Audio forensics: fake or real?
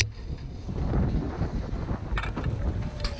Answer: real